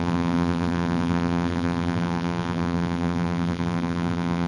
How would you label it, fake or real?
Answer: fake